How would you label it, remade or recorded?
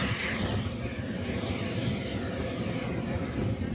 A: recorded